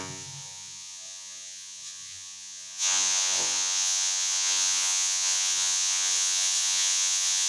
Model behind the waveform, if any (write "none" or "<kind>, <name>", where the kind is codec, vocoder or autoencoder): vocoder, Vocos